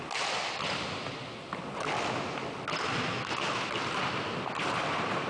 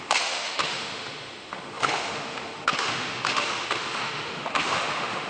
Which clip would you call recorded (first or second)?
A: first